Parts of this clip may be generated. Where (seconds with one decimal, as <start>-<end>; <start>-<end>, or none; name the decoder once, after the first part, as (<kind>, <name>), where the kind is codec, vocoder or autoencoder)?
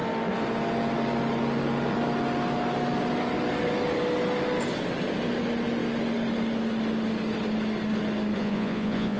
8.4-9.2 (vocoder, Vocos)